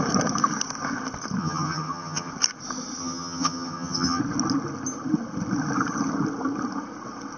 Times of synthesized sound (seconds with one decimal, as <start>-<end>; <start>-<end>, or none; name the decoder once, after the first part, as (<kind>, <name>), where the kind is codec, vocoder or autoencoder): 1.4-2.3 (vocoder, HiFi-GAN); 3.0-4.2